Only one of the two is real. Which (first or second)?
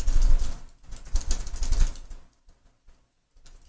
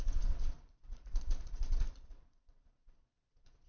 first